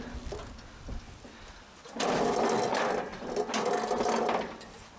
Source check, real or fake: real